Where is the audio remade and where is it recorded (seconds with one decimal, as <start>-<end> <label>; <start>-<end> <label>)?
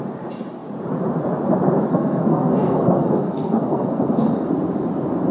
0.0-1.9 recorded; 1.9-4.5 remade; 4.5-5.3 recorded